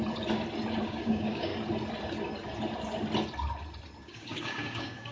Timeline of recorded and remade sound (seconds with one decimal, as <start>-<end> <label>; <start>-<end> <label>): 0.0-0.9 recorded; 0.9-1.5 remade; 1.5-4.0 recorded; 4.0-5.1 remade